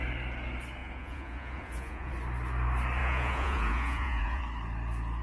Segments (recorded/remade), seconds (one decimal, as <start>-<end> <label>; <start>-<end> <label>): 0.0-0.8 recorded; 0.8-2.1 remade; 2.1-3.0 recorded; 3.0-4.4 remade; 4.4-5.2 recorded